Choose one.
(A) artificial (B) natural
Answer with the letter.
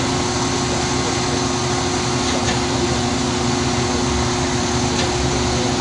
B